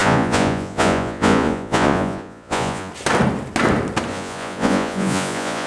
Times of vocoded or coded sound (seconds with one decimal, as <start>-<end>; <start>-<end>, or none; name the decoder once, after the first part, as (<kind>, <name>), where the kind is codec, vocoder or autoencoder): 0.0-2.9 (vocoder, Vocos); 4.1-5.7